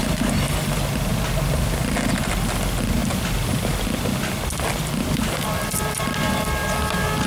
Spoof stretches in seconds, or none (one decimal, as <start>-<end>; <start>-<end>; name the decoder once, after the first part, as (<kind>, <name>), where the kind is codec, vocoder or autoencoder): none